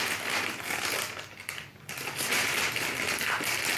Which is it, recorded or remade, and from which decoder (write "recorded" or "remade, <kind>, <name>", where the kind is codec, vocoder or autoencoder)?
recorded